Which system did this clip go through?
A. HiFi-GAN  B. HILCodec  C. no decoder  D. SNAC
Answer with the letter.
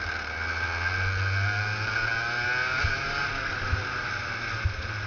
C